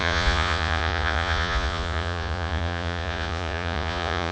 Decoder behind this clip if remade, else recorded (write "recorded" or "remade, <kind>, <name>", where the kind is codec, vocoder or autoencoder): remade, vocoder, Vocos